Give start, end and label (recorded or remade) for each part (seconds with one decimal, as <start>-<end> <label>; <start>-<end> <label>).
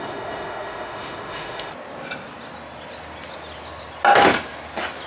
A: 0.0-1.7 remade; 1.7-5.1 recorded